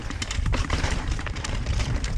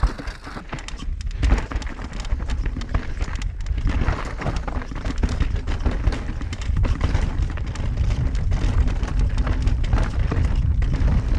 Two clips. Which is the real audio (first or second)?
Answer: second